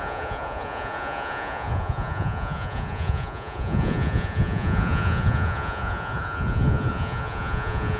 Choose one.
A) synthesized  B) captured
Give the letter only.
A